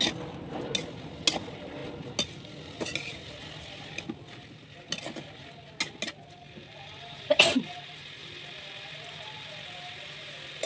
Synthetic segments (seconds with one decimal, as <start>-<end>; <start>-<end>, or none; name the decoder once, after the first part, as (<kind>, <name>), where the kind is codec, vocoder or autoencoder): none